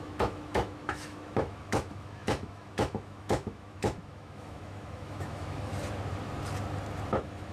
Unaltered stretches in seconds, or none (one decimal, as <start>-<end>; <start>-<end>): 5.7-7.1